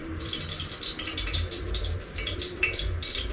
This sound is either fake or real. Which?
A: fake